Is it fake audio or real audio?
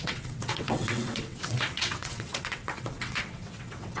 fake